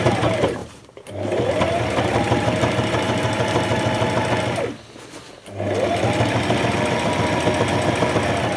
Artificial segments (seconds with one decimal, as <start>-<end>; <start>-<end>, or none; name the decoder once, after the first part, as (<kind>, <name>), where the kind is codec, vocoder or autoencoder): 0.0-3.7 (vocoder, BigVGAN v2)